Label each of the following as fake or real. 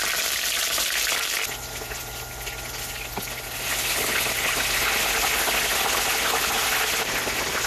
real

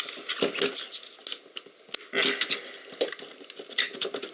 real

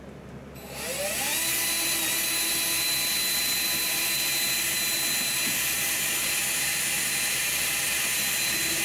real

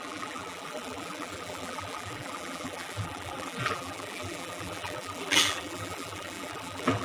fake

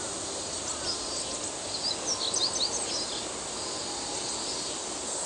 real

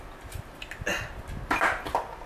real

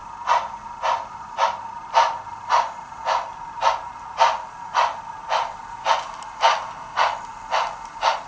real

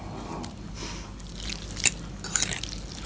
real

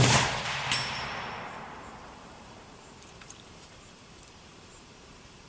fake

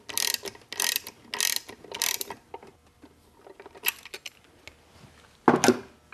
real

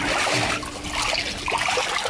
real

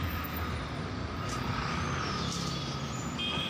real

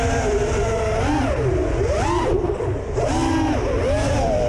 real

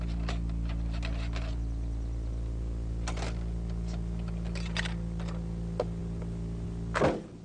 real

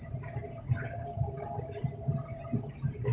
fake